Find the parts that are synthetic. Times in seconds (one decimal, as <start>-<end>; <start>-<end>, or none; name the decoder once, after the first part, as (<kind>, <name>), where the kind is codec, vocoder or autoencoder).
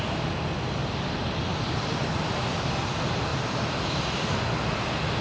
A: 1.5-2.7 (vocoder, BigVGAN v2); 3.3-4.4